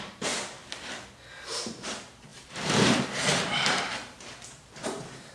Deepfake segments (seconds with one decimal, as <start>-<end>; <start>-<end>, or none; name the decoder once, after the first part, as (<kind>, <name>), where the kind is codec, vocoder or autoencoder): 0.0-0.6 (vocoder, BigVGAN v2); 1.7-5.3